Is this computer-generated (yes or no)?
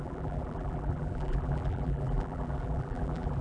yes